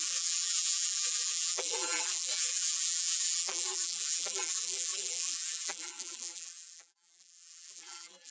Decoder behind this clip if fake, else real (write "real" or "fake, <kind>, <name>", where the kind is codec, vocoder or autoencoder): fake, vocoder, BigVGAN v2